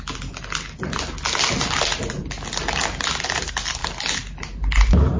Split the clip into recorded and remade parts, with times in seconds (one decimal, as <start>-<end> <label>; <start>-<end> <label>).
0.0-5.2 recorded